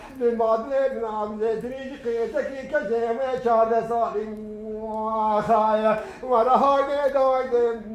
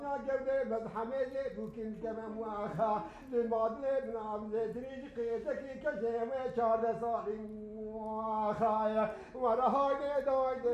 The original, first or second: second